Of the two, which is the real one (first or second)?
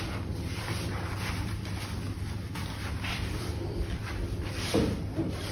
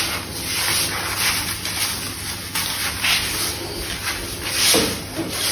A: second